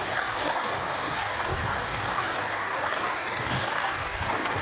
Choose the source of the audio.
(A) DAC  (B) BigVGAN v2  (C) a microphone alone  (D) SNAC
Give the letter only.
A